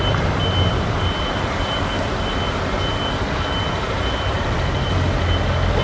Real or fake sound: real